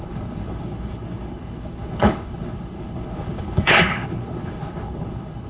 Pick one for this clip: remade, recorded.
remade